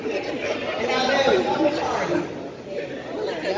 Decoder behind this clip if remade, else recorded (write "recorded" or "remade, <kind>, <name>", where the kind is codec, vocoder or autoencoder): recorded